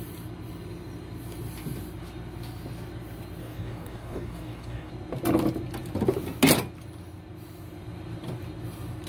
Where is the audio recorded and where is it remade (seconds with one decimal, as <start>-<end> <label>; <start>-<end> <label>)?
0.0-3.4 recorded; 3.4-4.9 remade; 4.9-9.1 recorded